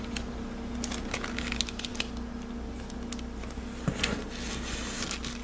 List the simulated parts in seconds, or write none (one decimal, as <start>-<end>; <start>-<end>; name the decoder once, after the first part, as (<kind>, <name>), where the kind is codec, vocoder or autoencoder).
none